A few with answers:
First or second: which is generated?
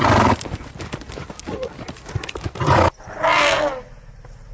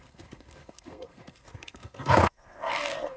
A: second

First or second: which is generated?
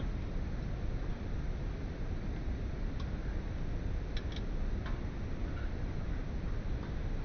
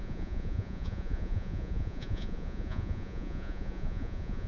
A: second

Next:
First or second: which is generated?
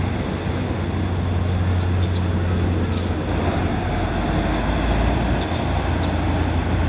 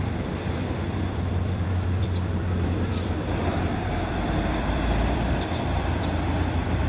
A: second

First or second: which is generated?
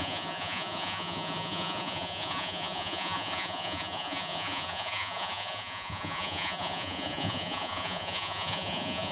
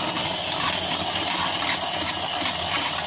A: first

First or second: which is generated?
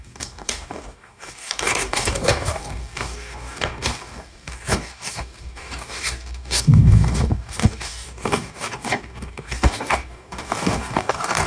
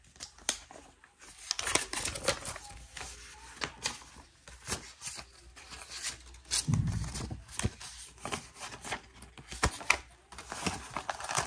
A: first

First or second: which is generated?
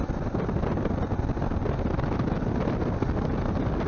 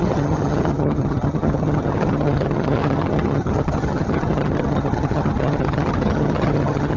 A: second